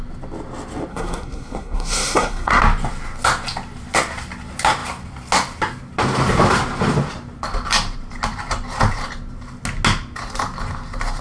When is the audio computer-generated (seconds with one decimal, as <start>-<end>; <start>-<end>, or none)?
0.9-2.6